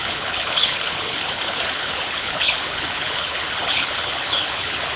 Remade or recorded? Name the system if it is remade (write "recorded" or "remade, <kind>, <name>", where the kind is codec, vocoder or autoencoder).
remade, codec, HILCodec